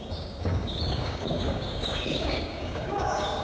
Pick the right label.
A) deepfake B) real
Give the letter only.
A